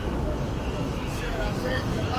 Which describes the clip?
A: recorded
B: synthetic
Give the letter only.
B